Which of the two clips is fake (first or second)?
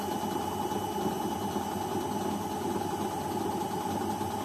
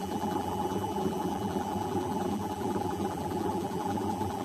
second